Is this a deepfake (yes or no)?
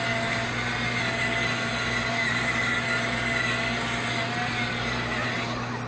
no